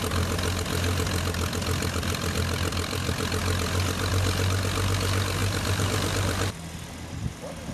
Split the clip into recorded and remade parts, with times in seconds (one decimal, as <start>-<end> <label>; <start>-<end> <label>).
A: 0.0-5.4 recorded; 5.4-6.5 remade; 6.5-7.7 recorded